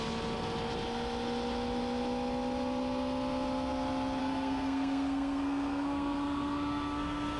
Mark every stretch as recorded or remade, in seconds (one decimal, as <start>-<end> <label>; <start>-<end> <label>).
0.0-4.2 recorded; 4.2-7.4 remade

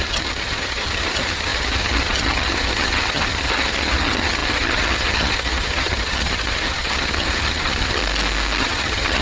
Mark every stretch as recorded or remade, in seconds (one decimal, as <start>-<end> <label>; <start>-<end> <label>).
0.0-8.0 remade; 8.0-8.6 recorded; 8.6-9.2 remade

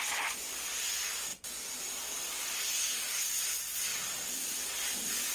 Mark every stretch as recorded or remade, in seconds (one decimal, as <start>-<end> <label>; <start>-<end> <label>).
0.0-5.3 recorded

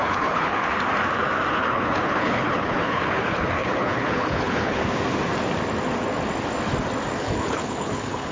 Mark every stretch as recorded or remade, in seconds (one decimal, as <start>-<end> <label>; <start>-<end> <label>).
0.0-0.6 remade; 0.6-1.5 recorded; 1.5-4.8 remade; 4.8-7.2 recorded; 7.2-8.3 remade

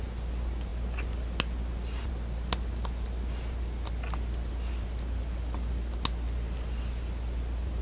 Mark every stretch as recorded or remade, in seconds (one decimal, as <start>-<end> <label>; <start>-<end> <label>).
0.0-7.8 recorded

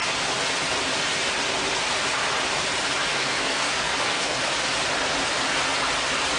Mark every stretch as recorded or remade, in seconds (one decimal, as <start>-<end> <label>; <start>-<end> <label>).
0.0-3.1 recorded; 3.1-4.4 remade; 4.4-6.4 recorded